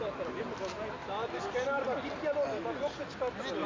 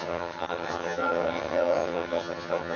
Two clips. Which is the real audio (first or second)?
first